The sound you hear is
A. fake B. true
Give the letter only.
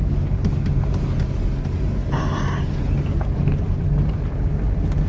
B